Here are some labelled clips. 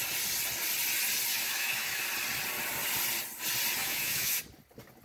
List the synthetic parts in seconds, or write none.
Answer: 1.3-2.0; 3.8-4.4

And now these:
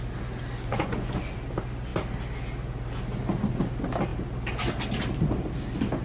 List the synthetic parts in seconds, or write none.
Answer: 0.7-1.3

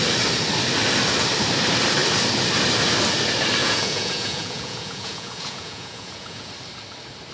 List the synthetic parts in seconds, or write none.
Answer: 3.6-6.5